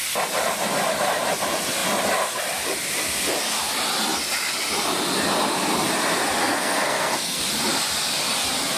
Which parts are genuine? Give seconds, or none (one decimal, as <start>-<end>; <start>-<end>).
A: 0.0-6.4; 7.4-8.8